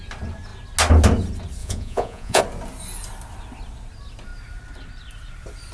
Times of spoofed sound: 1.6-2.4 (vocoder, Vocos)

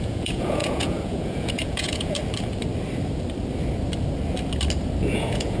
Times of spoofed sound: 0.0-2.2 (vocoder, Vocos); 5.0-5.6

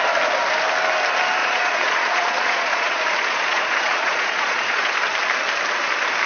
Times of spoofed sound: 1.4-4.9 (vocoder, Vocos)

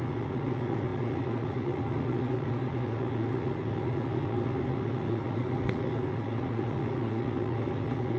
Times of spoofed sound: 0.0-8.2 (vocoder, Vocos)

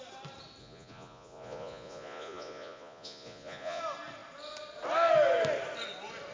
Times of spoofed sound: 0.6-3.8 (vocoder, Vocos)

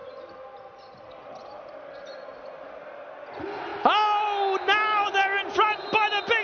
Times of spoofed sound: none